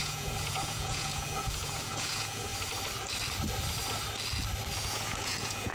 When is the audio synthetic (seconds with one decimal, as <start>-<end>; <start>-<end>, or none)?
0.0-2.5; 4.8-5.7